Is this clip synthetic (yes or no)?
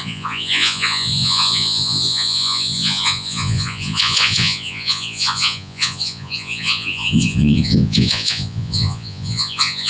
yes